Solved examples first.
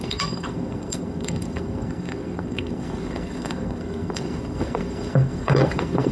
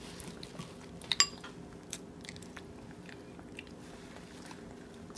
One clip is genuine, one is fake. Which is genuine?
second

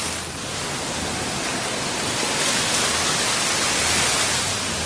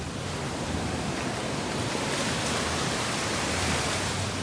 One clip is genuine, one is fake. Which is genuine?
first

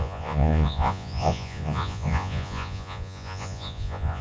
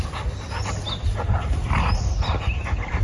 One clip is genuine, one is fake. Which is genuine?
second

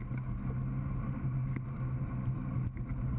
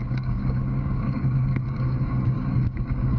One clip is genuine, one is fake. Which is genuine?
first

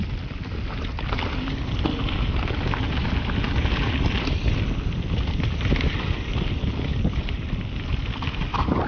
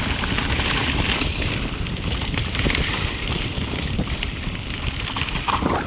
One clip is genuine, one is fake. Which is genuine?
first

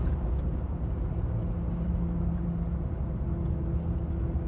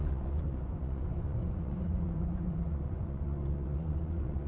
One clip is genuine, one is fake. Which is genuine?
first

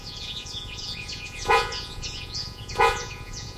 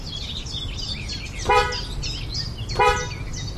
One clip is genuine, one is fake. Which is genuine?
second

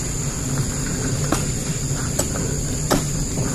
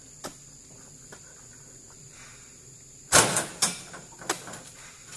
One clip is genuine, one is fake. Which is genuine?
second